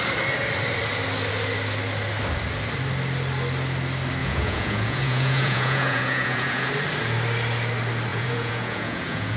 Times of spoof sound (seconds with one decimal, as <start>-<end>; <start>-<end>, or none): 4.2-6.7; 8.1-9.4